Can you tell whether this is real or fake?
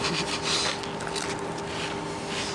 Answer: real